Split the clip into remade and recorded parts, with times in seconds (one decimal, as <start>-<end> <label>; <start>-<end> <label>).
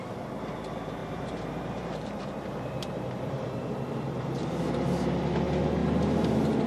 0.0-1.0 recorded; 1.0-4.5 remade; 4.5-6.7 recorded